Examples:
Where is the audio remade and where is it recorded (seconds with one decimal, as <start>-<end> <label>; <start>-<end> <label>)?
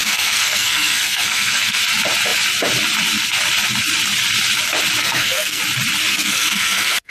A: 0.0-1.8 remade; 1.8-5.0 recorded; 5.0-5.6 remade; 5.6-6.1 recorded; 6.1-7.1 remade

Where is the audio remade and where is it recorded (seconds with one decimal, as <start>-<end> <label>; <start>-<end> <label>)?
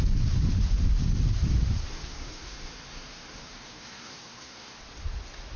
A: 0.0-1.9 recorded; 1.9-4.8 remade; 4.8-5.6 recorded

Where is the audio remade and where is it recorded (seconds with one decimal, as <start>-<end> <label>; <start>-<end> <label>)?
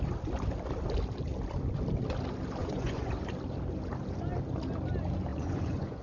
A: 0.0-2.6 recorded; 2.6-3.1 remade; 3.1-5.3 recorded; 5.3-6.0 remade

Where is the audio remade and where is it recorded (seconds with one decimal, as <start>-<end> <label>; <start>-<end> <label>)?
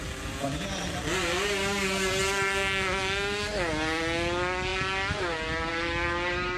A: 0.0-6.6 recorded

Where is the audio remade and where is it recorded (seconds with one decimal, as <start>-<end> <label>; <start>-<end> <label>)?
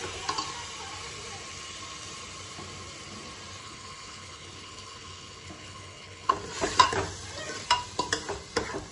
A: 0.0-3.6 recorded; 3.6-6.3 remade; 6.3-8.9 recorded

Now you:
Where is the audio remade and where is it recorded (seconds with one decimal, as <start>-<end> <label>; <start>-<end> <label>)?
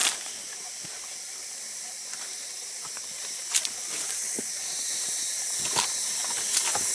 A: 0.0-4.2 recorded; 4.2-5.0 remade; 5.0-6.9 recorded